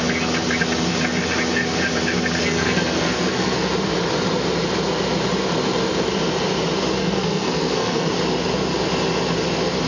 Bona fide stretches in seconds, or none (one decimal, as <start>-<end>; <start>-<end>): 0.0-2.4; 3.7-7.0; 8.1-9.9